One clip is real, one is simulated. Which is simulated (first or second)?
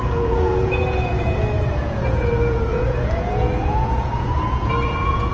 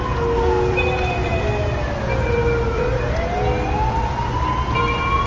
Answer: first